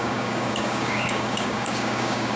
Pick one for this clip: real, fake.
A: fake